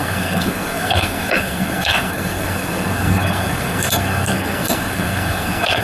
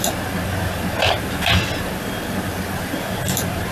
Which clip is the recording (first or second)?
second